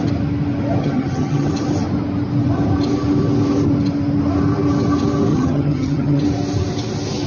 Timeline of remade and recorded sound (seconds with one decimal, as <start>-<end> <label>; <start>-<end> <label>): 0.0-0.8 recorded; 0.8-1.5 remade; 1.5-5.3 recorded; 5.3-6.2 remade; 6.2-7.3 recorded